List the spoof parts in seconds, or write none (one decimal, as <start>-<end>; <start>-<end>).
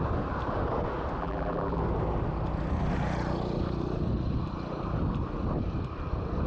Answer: 1.2-1.8